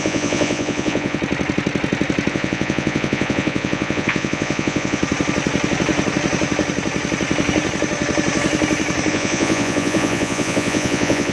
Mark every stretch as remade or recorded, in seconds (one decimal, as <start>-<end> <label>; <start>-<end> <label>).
0.0-1.2 remade; 1.2-2.3 recorded; 2.3-5.0 remade; 5.0-9.1 recorded; 9.1-11.3 remade